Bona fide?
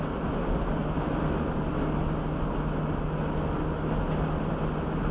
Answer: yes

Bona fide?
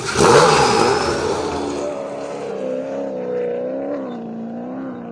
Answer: yes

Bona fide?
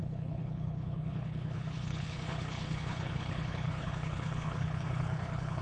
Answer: no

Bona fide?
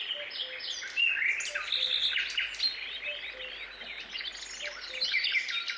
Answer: yes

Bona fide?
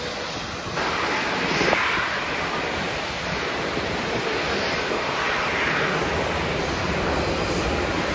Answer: yes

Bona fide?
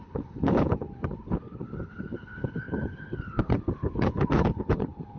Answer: no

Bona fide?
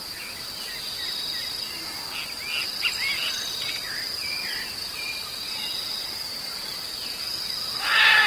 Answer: yes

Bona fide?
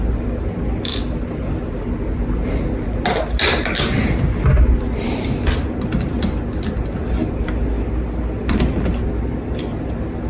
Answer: yes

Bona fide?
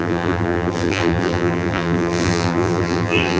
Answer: no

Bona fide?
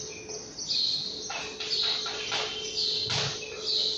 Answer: yes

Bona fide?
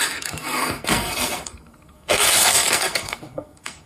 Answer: no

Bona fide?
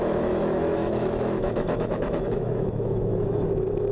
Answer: no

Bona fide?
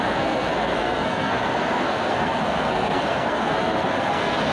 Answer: no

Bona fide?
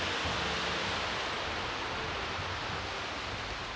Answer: yes